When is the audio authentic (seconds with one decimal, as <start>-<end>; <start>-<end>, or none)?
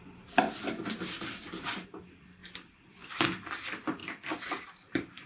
0.0-5.3